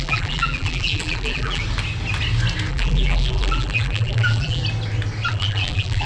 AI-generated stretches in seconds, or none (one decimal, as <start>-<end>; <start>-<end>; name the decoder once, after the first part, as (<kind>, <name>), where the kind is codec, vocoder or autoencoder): 0.0-1.6 (vocoder, BigVGAN v2); 2.7-4.6; 5.3-6.1